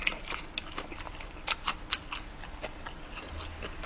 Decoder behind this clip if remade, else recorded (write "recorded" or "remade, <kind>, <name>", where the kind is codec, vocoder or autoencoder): recorded